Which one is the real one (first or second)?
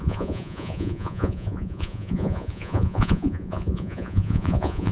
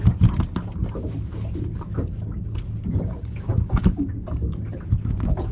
second